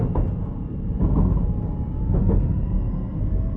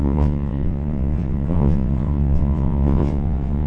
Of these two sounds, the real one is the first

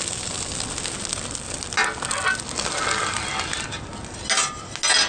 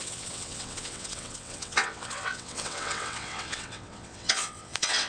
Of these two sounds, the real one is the first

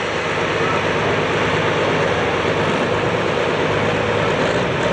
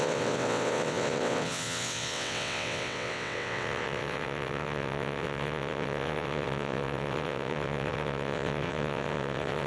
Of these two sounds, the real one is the first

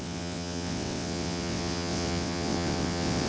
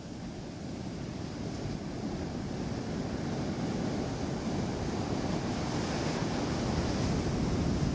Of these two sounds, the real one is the second